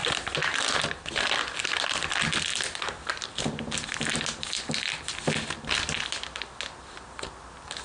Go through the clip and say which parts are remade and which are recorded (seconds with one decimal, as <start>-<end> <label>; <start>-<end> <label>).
0.0-7.8 recorded